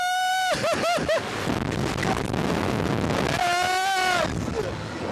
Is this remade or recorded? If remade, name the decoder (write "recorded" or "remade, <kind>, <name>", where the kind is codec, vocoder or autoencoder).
recorded